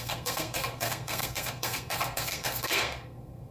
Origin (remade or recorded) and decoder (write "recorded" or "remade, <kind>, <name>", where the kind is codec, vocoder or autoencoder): remade, codec, SNAC